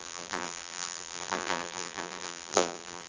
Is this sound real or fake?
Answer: fake